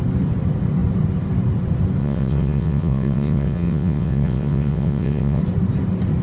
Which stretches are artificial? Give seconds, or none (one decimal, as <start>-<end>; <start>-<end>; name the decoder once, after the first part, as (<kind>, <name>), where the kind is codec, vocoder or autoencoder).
2.0-5.4 (vocoder, WaveNeXt)